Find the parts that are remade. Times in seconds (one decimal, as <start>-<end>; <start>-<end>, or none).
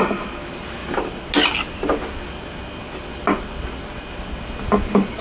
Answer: none